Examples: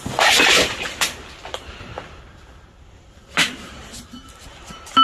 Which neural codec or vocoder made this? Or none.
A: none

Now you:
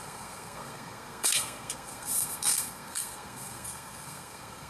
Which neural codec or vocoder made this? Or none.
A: codec, SNAC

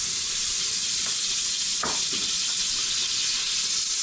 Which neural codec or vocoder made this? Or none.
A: none